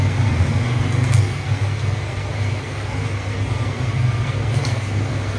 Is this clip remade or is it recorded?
remade